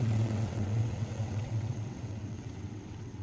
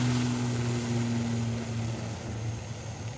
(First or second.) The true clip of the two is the second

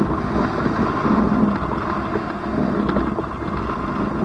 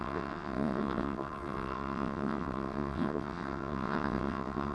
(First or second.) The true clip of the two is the first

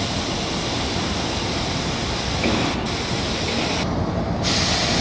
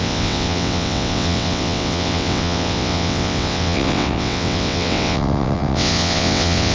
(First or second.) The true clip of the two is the first